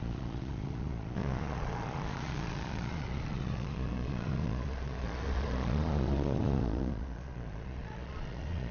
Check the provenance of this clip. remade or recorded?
remade